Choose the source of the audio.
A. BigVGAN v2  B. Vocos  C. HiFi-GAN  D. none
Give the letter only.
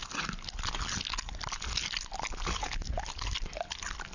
D